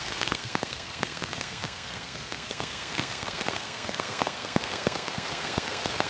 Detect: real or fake fake